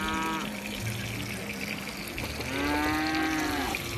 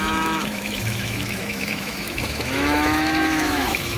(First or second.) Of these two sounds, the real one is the first